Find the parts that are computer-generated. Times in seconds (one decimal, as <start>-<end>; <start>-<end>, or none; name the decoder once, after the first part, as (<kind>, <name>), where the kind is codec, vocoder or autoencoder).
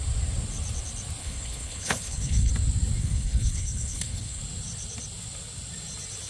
1.2-2.5 (codec, HILCodec); 3.0-4.4